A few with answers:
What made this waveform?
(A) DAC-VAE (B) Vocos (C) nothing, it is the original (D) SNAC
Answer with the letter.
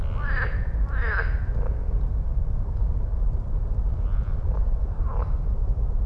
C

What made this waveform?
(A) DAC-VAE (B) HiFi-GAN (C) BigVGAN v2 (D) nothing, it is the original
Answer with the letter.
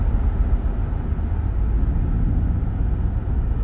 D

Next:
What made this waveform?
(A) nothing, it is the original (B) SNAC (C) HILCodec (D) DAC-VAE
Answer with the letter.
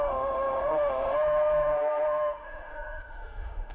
D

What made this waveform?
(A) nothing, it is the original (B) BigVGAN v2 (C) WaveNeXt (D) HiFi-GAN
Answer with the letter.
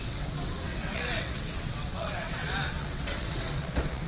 C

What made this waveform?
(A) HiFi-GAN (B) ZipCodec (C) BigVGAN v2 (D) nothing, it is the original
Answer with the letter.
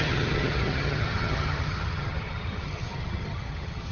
A